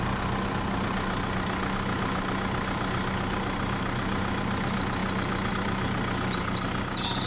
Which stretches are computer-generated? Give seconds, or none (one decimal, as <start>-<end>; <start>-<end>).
none